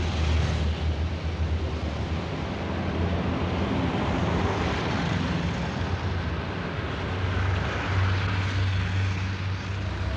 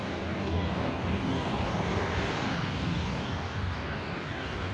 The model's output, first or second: second